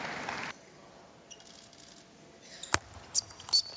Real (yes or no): yes